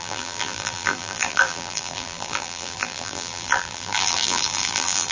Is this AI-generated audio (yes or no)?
yes